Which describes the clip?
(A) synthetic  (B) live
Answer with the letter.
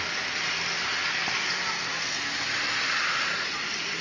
B